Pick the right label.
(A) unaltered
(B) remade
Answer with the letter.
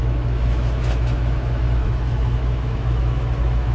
B